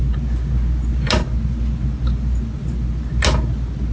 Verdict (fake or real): real